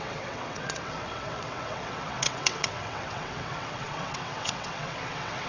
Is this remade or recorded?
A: remade